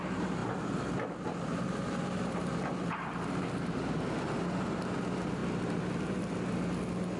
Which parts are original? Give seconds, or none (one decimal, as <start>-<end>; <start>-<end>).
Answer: 0.0-0.4; 3.8-5.4; 6.3-7.2